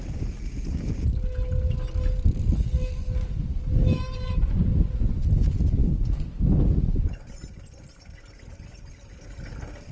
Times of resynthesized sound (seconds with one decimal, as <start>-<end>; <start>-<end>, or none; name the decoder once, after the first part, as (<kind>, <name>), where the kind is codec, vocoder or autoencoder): none